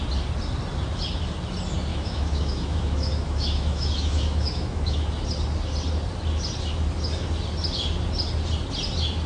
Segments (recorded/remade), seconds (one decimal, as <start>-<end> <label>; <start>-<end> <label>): 0.0-1.9 recorded; 1.9-5.1 remade; 5.1-9.3 recorded